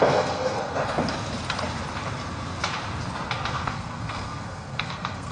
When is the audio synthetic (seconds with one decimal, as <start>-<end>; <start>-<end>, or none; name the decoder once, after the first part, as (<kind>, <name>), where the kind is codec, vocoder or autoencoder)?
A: 0.0-1.0 (codec, SNAC); 3.5-5.3